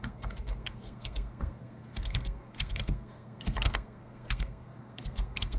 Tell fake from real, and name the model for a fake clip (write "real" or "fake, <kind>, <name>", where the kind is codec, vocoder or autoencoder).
fake, codec, SNAC